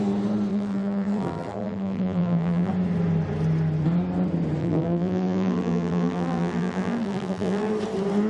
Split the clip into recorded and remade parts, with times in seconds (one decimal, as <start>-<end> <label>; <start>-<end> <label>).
0.0-0.5 recorded; 0.5-2.7 remade; 2.7-4.6 recorded; 4.6-7.7 remade; 7.7-8.3 recorded